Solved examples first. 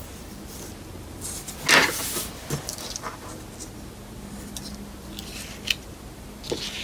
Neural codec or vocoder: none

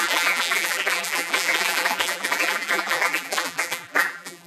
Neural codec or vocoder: vocoder, BigVGAN v2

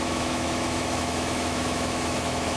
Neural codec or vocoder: autoencoder, DAC-VAE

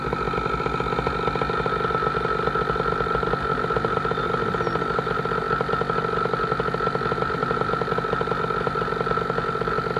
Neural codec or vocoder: none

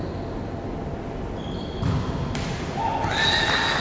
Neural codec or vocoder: none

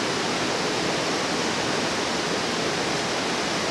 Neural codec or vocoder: none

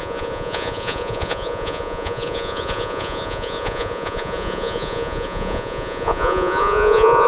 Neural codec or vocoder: vocoder, Vocos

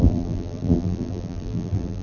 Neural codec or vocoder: vocoder, BigVGAN v2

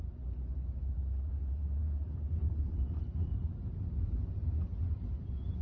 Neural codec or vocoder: vocoder, BigVGAN v2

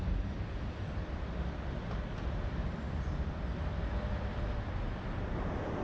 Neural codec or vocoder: vocoder, BigVGAN v2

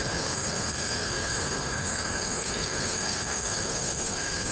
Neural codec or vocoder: codec, SNAC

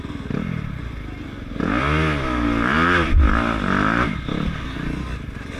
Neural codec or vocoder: none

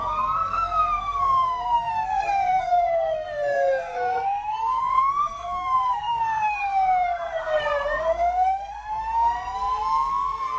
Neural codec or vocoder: codec, SNAC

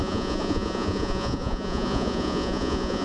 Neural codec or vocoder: vocoder, Vocos